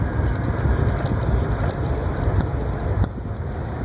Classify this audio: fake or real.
real